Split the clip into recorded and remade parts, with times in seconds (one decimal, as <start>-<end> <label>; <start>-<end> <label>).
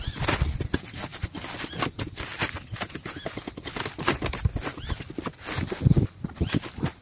0.0-7.0 recorded